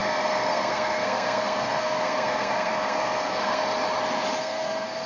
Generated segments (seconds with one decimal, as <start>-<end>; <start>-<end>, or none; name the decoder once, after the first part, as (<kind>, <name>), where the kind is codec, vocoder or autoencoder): 0.0-3.6 (codec, SNAC); 4.4-5.1